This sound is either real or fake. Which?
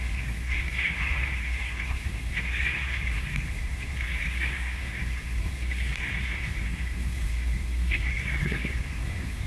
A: fake